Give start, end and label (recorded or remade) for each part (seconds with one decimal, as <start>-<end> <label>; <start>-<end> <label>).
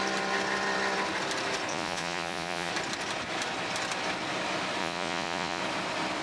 0.0-1.7 recorded; 1.7-2.7 remade; 2.7-4.8 recorded; 4.8-5.6 remade; 5.6-6.2 recorded